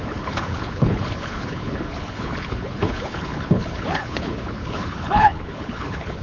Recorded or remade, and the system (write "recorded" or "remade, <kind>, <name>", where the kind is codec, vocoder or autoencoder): remade, codec, HILCodec